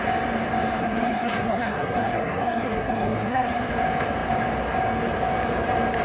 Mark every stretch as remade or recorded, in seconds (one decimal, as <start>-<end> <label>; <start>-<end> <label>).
0.0-0.8 recorded; 0.8-3.7 remade; 3.7-6.0 recorded